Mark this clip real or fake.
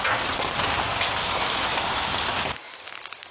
real